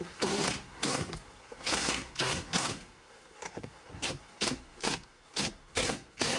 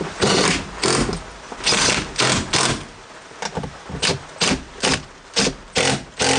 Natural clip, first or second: second